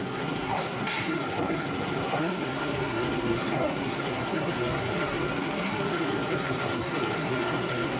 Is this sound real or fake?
fake